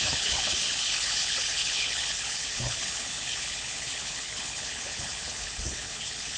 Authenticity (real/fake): fake